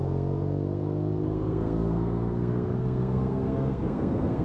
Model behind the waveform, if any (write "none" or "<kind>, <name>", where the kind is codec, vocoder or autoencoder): codec, SNAC